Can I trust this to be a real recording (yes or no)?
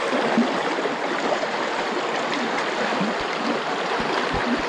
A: yes